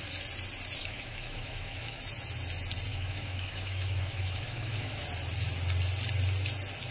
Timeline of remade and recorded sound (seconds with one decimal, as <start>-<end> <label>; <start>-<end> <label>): 0.0-0.8 recorded; 0.8-2.0 remade; 2.0-2.9 recorded; 2.9-5.0 remade; 5.0-6.9 recorded